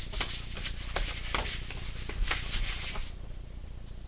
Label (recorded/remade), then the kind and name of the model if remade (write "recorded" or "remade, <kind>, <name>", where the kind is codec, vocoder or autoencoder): recorded